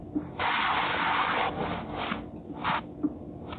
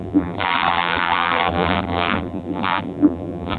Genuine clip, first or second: first